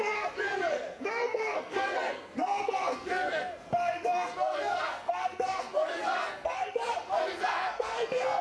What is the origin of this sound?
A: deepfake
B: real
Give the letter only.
A